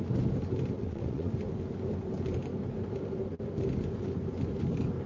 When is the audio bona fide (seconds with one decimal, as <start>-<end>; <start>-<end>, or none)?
0.0-0.8; 1.3-5.1